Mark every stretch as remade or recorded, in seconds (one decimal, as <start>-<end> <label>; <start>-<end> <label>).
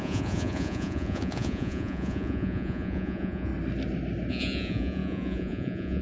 0.0-3.5 remade; 3.5-4.3 recorded; 4.3-6.0 remade